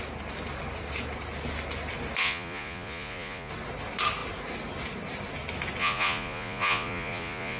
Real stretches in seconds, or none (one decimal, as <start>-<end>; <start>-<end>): 0.0-2.2; 3.5-5.8